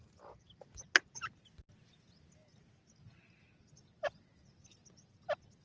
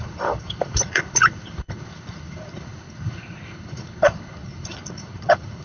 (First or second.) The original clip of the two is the first